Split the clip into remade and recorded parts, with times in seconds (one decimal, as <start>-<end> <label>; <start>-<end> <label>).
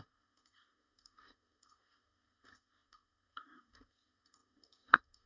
0.0-5.3 remade